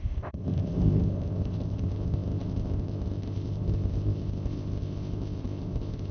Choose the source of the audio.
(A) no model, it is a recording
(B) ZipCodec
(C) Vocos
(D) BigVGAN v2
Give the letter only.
B